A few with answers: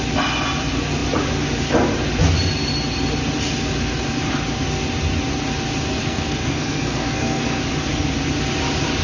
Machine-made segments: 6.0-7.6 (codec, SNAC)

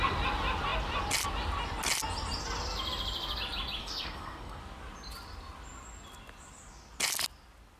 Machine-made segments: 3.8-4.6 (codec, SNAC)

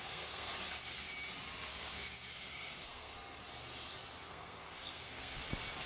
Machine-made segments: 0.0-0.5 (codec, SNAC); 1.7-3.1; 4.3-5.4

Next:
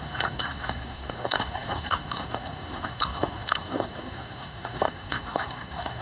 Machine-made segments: 0.0-6.0 (codec, SNAC)